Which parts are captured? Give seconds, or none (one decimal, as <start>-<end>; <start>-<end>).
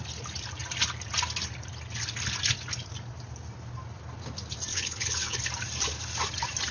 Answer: 0.0-4.7; 5.4-6.7